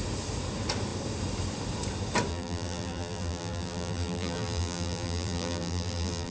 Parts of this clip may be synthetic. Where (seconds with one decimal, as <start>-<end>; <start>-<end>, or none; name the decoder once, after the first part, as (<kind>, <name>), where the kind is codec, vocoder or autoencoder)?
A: 2.3-6.3 (vocoder, BigVGAN v2)